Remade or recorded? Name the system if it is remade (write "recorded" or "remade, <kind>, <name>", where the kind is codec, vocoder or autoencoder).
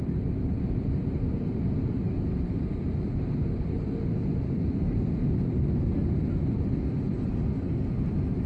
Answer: remade, vocoder, BigVGAN v2